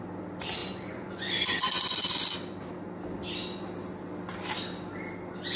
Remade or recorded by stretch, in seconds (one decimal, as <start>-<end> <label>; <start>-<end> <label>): 0.0-0.6 recorded; 0.6-2.2 remade; 2.2-5.6 recorded